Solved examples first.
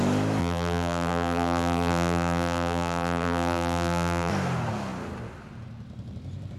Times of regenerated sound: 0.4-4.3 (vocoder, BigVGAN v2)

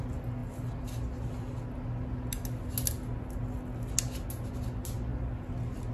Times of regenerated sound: none

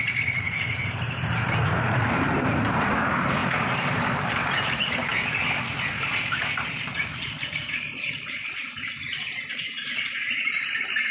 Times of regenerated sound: 0.0-5.1 (vocoder, BigVGAN v2); 6.7-11.1